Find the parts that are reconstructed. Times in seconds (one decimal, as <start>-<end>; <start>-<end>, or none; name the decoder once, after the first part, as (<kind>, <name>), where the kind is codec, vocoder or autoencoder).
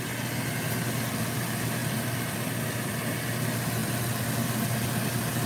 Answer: 1.8-3.0 (vocoder, BigVGAN v2)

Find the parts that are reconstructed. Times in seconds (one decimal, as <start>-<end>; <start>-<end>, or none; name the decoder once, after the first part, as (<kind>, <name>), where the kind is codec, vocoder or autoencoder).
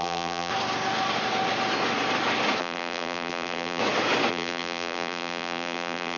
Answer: 0.0-0.5 (vocoder, BigVGAN v2); 2.6-3.8; 4.3-6.2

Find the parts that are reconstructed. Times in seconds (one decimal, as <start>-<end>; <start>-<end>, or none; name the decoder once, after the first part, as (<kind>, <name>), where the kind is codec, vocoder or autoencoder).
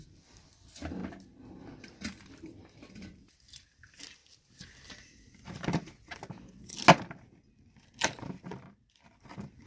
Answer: 0.0-1.0 (vocoder, BigVGAN v2); 1.8-4.2; 7.5-9.7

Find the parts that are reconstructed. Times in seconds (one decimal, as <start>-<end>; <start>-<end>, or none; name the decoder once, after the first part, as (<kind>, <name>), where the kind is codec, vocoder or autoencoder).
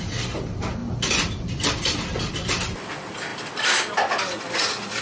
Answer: 0.8-1.7 (vocoder, BigVGAN v2)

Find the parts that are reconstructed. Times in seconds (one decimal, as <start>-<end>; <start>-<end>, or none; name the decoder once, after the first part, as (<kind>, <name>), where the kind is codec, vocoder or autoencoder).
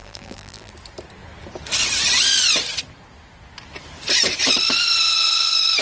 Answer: 0.0-0.7 (vocoder, BigVGAN v2)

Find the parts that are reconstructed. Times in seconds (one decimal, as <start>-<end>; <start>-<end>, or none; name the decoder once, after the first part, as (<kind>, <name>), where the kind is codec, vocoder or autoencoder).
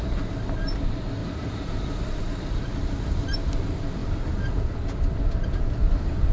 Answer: 1.2-2.2 (vocoder, BigVGAN v2)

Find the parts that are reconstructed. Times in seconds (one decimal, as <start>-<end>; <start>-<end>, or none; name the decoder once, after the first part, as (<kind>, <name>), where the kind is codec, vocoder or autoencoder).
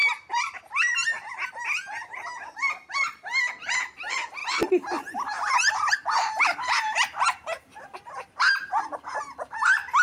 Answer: 3.4-10.0 (vocoder, BigVGAN v2)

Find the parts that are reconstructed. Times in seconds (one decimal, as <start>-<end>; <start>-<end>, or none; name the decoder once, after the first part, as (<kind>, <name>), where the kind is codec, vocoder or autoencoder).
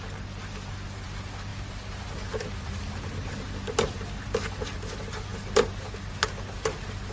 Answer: none